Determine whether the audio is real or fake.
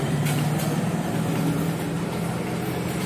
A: real